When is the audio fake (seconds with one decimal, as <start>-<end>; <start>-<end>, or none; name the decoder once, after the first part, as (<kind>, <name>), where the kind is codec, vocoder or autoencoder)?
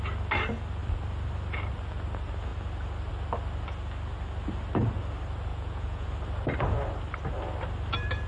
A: 5.5-6.1 (vocoder, Vocos)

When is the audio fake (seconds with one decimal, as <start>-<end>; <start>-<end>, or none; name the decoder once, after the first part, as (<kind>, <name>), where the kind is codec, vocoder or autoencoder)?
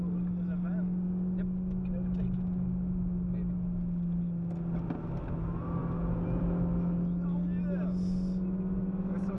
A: none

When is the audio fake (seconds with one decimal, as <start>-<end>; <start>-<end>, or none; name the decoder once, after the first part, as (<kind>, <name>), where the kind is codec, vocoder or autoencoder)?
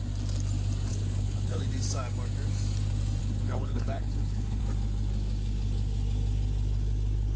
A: 0.9-1.7 (codec, HILCodec); 3.2-4.6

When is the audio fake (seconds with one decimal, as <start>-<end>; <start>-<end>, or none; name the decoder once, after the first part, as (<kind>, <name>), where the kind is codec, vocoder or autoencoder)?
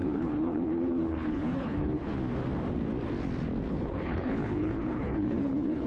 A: 0.0-2.1 (codec, HILCodec); 3.7-5.9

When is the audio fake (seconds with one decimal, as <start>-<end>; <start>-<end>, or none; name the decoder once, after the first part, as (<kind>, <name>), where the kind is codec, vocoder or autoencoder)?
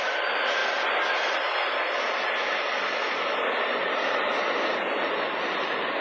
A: none